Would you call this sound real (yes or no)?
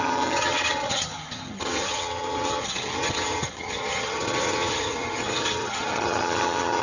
no